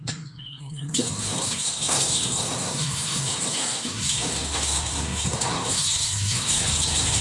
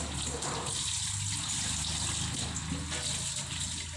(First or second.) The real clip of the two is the second